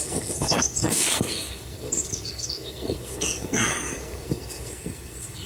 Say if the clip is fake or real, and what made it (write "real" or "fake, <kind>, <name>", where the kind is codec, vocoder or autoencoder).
fake, codec, SNAC